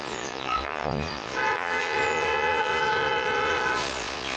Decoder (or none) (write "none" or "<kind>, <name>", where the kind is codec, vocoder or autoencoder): vocoder, Vocos